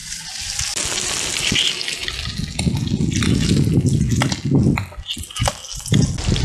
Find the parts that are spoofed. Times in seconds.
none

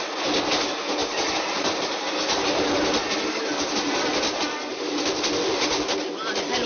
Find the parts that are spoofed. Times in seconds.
1.0-5.0 (vocoder, BigVGAN v2)

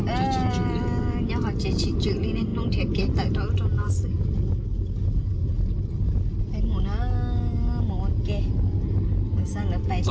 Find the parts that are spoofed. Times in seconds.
none

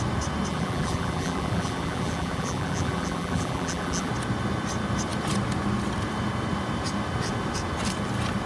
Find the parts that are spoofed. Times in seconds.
0.5-4.1 (vocoder, BigVGAN v2)